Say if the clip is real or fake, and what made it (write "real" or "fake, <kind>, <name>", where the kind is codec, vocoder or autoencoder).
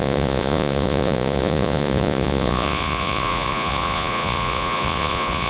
fake, vocoder, Vocos